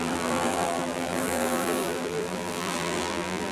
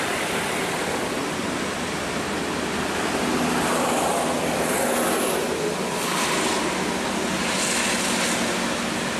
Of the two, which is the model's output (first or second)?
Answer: first